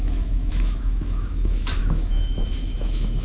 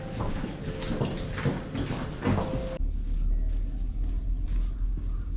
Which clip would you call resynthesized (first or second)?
first